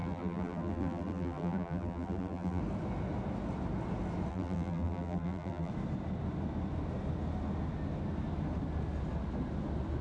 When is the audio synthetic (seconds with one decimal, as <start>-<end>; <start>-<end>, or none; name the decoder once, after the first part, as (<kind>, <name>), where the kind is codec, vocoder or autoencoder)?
0.0-2.6 (vocoder, BigVGAN v2); 4.3-5.7